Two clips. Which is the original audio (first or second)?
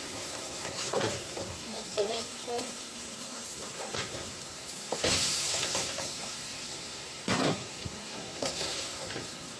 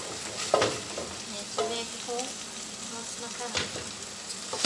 second